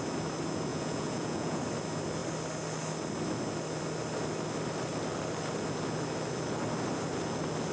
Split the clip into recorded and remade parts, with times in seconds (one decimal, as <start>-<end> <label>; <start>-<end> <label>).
0.0-0.7 recorded; 0.7-1.6 remade; 1.6-7.7 recorded